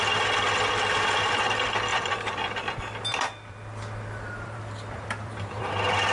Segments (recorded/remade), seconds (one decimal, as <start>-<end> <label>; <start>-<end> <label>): 0.0-1.9 recorded; 1.9-5.6 remade; 5.6-6.1 recorded